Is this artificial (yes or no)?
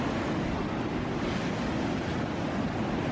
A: no